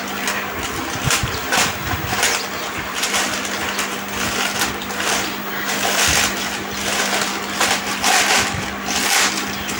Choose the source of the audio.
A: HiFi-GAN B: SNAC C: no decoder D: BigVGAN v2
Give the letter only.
C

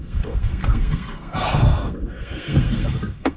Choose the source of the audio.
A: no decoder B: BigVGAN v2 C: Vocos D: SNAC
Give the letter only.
D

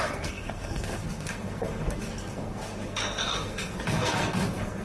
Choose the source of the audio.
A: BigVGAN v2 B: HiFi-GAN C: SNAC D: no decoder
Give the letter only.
C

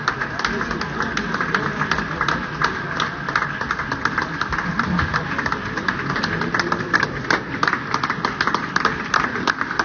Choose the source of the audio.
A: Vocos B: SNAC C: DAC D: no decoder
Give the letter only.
D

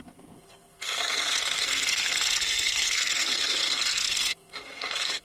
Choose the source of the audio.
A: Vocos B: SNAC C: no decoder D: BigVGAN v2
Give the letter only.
B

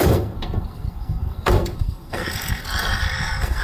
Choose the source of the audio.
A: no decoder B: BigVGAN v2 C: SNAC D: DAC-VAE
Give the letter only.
C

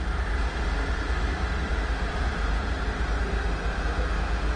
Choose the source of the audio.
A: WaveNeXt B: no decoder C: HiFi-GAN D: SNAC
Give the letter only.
B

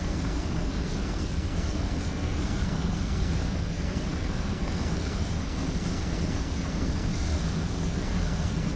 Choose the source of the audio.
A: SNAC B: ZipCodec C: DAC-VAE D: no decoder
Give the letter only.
A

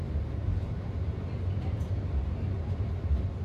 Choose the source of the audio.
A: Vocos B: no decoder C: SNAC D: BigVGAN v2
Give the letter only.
B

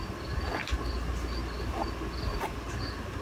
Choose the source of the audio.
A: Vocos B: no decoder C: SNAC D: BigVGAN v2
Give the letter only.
B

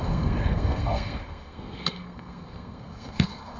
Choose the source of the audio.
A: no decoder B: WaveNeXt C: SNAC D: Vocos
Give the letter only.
C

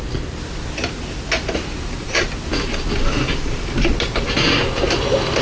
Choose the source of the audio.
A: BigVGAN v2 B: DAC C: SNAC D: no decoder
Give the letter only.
D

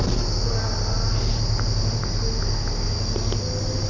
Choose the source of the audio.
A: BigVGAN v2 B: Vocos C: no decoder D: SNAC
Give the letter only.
C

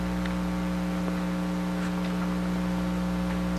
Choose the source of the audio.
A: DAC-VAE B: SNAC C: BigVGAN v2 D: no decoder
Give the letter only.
D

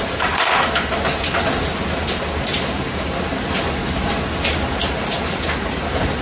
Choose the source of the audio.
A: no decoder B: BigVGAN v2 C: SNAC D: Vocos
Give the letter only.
A